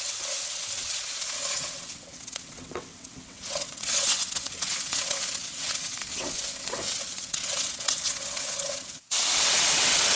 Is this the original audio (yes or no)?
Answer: no